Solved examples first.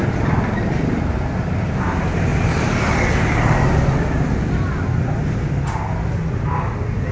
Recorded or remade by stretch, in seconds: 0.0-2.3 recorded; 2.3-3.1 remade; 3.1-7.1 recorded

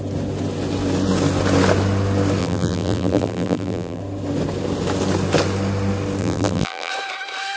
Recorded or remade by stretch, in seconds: 0.0-2.4 recorded; 2.4-4.0 remade; 4.0-6.2 recorded; 6.2-6.9 remade; 6.9-7.6 recorded

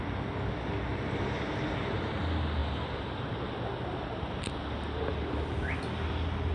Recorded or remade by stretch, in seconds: 0.0-0.9 recorded; 0.9-2.2 remade; 2.2-2.6 recorded; 2.6-3.4 remade; 3.4-6.5 recorded

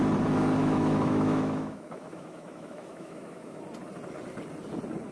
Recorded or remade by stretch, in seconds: 0.0-0.6 recorded; 0.6-3.6 remade; 3.6-5.1 recorded

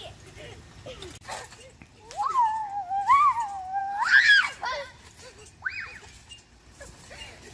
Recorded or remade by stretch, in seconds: 0.0-7.5 recorded

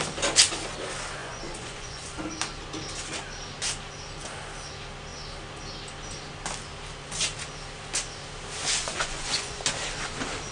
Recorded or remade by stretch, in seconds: 0.0-1.2 recorded; 1.2-2.3 remade; 2.3-8.8 recorded; 8.8-9.6 remade; 9.6-10.5 recorded

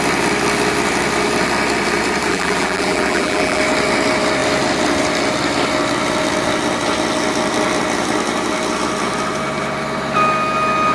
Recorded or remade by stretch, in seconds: 0.0-2.3 recorded; 2.3-3.6 remade; 3.6-10.9 recorded

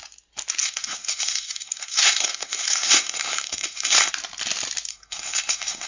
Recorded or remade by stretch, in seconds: 0.0-0.6 recorded; 0.6-4.1 remade; 4.1-4.9 recorded; 4.9-5.9 remade